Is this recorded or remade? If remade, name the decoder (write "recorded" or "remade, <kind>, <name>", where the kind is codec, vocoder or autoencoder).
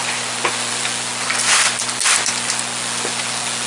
recorded